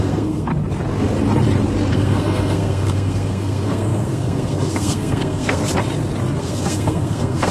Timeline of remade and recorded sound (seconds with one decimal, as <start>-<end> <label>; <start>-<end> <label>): 0.0-0.5 remade; 0.5-1.9 recorded; 1.9-5.6 remade; 5.6-6.4 recorded; 6.4-7.5 remade